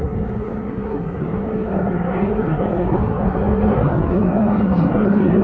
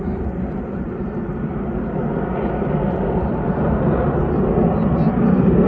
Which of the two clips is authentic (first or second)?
second